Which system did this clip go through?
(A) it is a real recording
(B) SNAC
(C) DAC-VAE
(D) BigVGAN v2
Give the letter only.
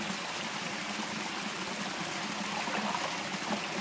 A